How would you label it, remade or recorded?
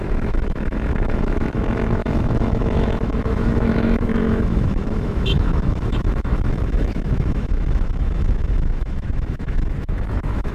remade